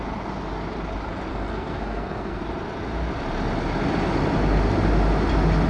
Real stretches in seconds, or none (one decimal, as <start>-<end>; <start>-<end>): 0.0-1.3; 2.4-5.7